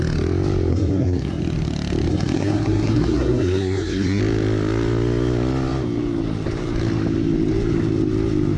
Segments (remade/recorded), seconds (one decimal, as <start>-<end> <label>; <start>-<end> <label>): 0.0-0.7 recorded; 0.7-1.4 remade; 1.4-2.1 recorded; 2.1-4.2 remade; 4.2-8.6 recorded